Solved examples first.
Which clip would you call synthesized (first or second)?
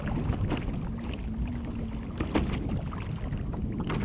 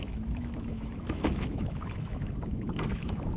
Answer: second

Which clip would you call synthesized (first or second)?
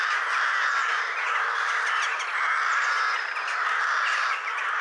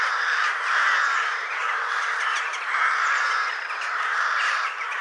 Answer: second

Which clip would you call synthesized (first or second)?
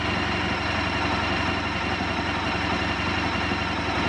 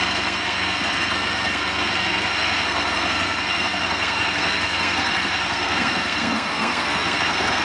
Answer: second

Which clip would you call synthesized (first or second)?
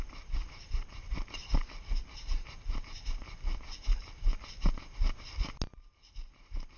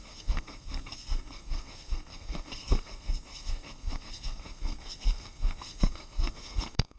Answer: second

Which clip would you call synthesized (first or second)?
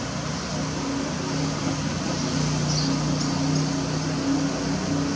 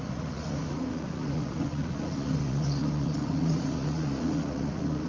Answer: second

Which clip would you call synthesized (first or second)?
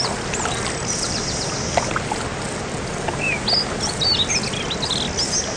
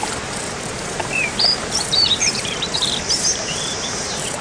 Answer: second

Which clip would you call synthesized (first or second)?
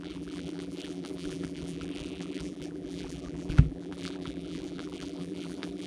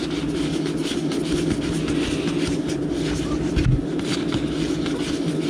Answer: first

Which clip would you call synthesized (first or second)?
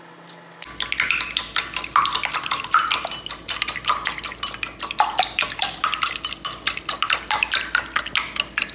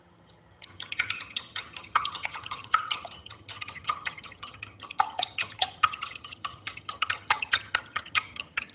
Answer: second